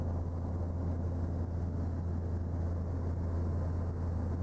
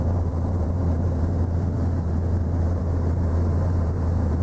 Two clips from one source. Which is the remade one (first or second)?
second